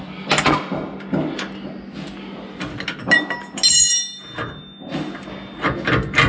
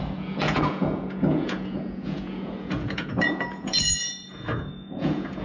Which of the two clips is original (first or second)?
first